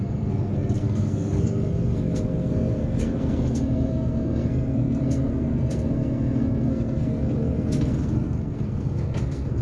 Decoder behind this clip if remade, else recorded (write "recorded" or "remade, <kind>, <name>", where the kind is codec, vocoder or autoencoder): remade, codec, SNAC